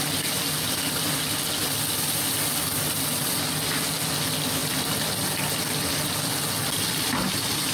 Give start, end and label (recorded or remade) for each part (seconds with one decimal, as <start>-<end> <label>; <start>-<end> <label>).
0.0-7.7 recorded